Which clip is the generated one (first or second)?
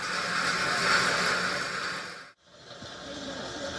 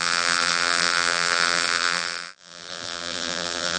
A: second